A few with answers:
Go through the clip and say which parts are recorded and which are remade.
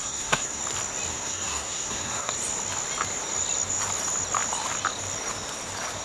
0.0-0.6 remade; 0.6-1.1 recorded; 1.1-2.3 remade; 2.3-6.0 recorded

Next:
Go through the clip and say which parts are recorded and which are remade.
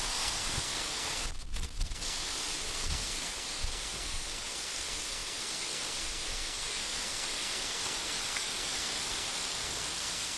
0.0-10.4 remade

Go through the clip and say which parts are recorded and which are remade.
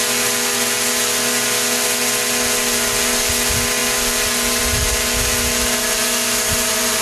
0.0-7.0 recorded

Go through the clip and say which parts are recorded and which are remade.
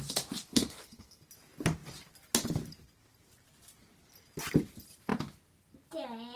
0.0-0.5 recorded; 0.5-1.2 remade; 1.2-6.4 recorded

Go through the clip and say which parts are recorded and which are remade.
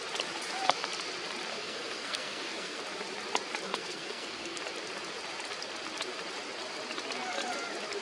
0.0-1.5 recorded; 1.5-2.8 remade; 2.8-3.7 recorded; 3.7-4.6 remade; 4.6-8.0 recorded